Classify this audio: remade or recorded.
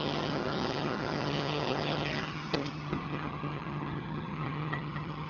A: remade